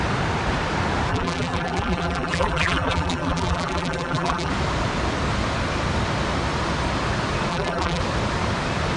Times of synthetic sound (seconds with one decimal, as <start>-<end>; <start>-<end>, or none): 1.1-4.5; 7.5-8.0